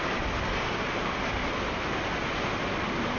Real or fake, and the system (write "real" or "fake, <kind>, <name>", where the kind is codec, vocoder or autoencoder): real